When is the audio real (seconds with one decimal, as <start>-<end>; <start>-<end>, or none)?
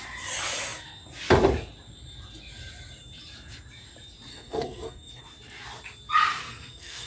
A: 0.0-4.3; 5.2-6.4